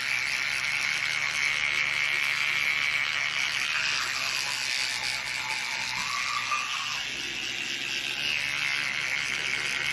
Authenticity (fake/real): real